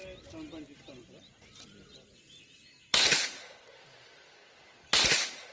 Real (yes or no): yes